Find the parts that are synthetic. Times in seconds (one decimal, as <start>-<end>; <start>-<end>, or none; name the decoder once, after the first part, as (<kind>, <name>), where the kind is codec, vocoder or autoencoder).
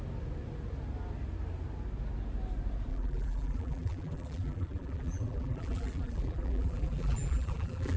2.9-8.0 (vocoder, BigVGAN v2)